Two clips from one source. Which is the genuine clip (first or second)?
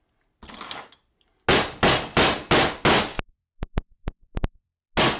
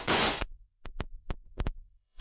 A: first